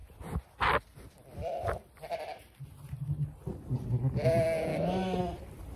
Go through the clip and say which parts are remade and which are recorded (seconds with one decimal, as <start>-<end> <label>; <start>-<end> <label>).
0.0-4.7 recorded; 4.7-5.2 remade; 5.2-5.8 recorded

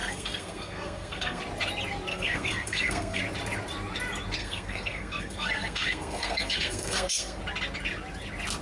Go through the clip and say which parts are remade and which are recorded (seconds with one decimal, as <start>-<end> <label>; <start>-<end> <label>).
0.0-1.4 remade; 1.4-2.1 recorded; 2.1-3.2 remade; 3.2-4.4 recorded; 4.4-7.4 remade; 7.4-8.6 recorded

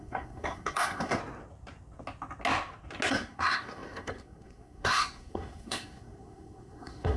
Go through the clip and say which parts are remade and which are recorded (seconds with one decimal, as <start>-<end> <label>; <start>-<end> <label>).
0.0-1.2 remade; 1.2-3.1 recorded; 3.1-7.2 remade

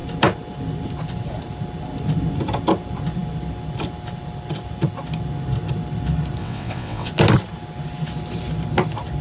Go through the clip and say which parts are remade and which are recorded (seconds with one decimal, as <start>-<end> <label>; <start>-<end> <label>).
0.0-6.4 recorded; 6.4-7.1 remade; 7.1-9.2 recorded

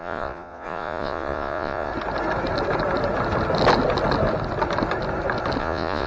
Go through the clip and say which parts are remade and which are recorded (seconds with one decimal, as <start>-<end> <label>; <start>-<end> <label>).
0.0-1.9 remade; 1.9-5.6 recorded; 5.6-6.1 remade

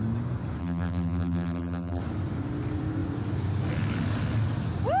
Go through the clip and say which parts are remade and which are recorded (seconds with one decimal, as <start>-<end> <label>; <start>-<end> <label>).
0.0-0.6 recorded; 0.6-2.0 remade; 2.0-5.0 recorded